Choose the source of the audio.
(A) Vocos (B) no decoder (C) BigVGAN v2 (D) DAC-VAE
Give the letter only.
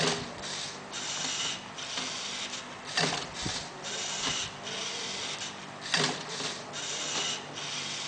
B